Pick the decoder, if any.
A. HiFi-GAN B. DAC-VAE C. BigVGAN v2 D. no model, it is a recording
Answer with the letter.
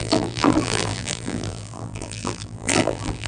C